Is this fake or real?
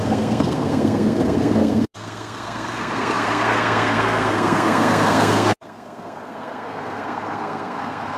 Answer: fake